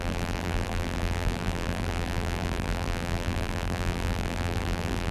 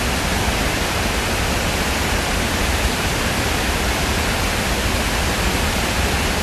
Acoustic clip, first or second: second